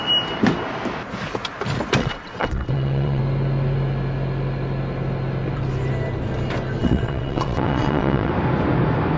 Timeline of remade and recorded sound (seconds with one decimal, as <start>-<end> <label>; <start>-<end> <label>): 0.0-2.0 recorded; 2.0-3.2 remade; 3.2-6.8 recorded; 6.8-8.3 remade; 8.3-9.2 recorded